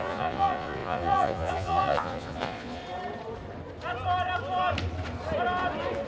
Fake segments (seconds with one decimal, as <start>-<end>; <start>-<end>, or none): 0.0-2.8